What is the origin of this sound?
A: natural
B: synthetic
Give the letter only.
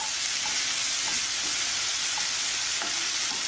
A